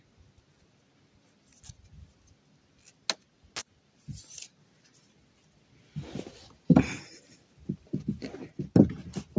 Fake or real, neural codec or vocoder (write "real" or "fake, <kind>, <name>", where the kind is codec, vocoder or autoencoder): real